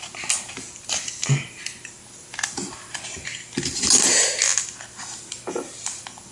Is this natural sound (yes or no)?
yes